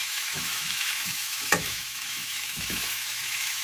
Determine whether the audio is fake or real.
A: fake